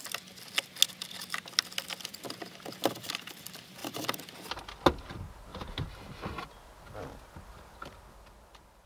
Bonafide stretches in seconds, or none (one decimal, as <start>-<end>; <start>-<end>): 0.0-3.8; 4.6-5.5; 6.0-8.9